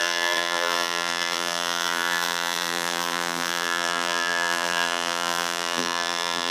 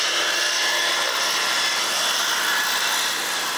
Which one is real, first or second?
second